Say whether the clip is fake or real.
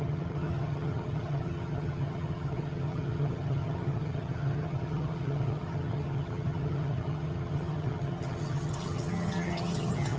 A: fake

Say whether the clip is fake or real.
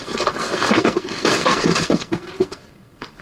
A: fake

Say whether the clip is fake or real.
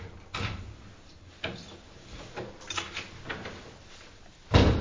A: real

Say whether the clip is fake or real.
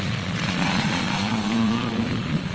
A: fake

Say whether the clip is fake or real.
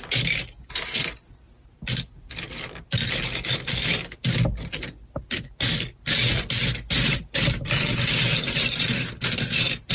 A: real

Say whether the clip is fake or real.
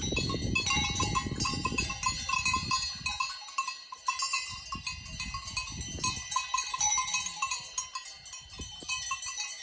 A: real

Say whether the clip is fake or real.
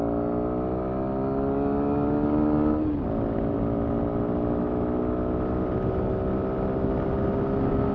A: real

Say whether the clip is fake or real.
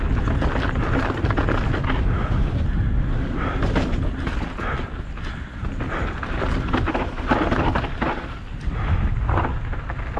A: real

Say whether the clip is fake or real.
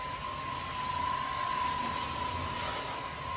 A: real